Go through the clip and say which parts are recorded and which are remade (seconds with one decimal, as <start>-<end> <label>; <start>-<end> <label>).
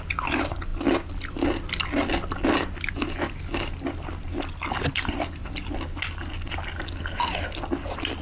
0.0-8.2 recorded